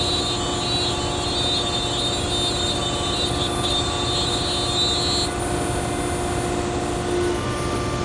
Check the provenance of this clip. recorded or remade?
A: recorded